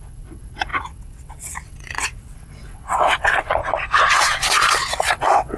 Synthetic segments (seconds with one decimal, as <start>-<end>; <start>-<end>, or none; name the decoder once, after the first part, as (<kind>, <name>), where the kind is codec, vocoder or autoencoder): 0.0-3.6 (vocoder, WaveNeXt); 4.1-5.6